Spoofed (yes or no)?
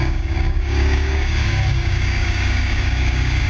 yes